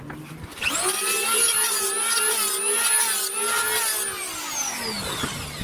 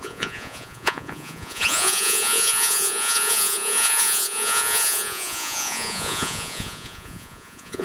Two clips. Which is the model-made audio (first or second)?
second